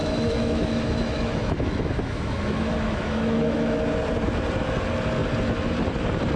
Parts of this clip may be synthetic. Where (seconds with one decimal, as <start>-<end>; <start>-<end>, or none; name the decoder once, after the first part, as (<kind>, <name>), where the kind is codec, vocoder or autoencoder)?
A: 0.0-3.8 (autoencoder, DAC-VAE)